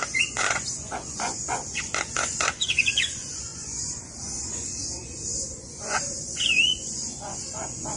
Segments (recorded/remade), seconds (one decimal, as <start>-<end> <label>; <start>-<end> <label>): 0.0-8.0 remade